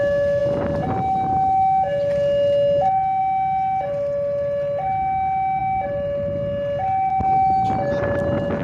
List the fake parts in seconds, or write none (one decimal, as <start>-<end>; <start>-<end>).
none